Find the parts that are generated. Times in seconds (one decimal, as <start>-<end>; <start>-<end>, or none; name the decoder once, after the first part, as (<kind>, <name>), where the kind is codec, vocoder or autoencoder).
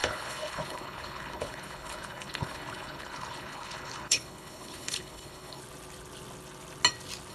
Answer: 0.0-5.6 (codec, HILCodec)